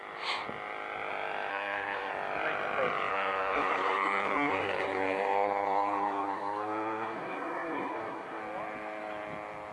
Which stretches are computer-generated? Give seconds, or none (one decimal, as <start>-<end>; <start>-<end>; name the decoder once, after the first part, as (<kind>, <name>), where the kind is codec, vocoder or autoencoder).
1.5-2.1 (codec, SNAC); 3.1-8.4